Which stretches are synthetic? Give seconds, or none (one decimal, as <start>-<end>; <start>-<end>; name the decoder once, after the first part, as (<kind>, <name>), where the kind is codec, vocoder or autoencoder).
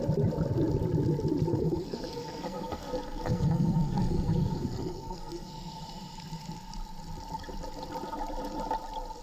1.5-5.8 (codec, SNAC)